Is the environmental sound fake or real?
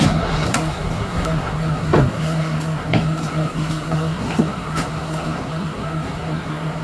fake